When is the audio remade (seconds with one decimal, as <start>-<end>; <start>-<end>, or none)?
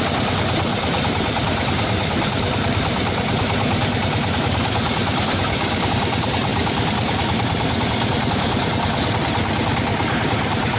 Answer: 0.7-5.9